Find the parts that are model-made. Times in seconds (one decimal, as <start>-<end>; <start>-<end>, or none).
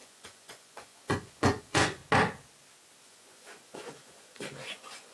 0.0-2.0; 3.0-5.1